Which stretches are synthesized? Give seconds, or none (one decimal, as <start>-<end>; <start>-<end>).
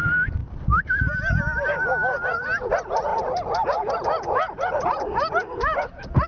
none